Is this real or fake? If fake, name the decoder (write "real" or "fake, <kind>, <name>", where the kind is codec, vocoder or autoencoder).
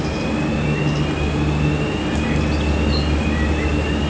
real